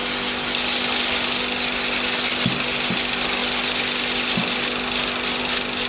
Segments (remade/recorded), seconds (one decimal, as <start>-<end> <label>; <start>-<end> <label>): 0.0-5.9 recorded